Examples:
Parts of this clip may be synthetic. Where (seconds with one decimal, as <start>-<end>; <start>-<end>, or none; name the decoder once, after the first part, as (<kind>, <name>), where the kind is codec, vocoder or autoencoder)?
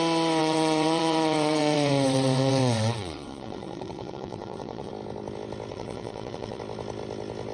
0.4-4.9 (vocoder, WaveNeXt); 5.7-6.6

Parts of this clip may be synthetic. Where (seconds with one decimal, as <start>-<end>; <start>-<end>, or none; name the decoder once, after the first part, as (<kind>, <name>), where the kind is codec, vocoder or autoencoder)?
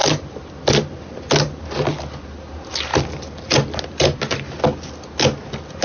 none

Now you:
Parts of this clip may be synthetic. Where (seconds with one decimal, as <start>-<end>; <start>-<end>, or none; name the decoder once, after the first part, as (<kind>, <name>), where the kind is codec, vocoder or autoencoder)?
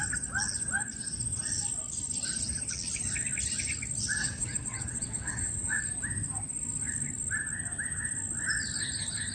4.2-5.8 (vocoder, WaveNeXt)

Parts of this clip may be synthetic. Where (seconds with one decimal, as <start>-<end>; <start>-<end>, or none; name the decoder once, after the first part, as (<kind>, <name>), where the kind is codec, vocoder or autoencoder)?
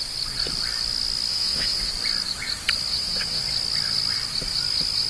1.3-1.9 (vocoder, WaveNeXt); 2.9-3.4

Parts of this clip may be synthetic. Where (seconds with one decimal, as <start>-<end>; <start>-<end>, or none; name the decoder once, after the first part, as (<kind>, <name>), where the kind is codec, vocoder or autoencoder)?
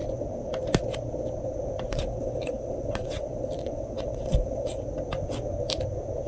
1.9-4.9 (vocoder, WaveNeXt)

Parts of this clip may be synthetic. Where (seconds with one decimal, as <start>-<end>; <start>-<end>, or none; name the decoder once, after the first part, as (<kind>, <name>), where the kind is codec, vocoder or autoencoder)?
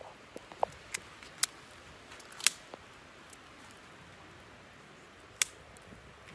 none